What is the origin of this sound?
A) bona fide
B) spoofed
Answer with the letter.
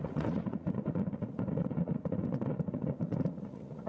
B